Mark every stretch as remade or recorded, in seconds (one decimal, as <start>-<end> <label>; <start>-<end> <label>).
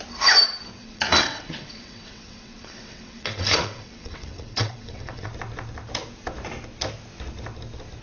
0.0-0.8 recorded; 0.8-5.3 remade; 5.3-8.0 recorded